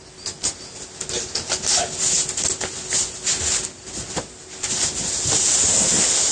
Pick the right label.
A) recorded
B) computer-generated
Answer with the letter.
A